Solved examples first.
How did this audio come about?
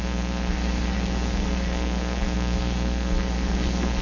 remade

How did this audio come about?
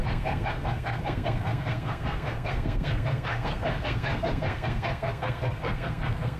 remade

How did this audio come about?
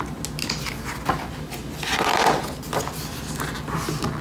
recorded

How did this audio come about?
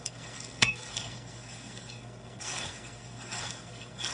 remade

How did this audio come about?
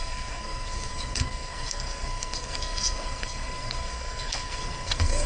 remade